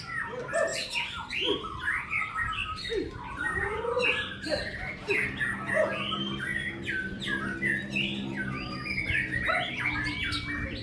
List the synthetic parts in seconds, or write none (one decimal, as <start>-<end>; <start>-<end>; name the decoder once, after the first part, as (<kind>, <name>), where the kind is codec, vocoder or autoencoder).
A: 0.7-2.0 (vocoder, BigVGAN v2); 2.6-5.1